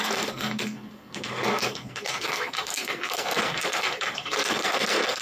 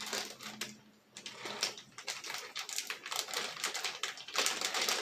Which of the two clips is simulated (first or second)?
first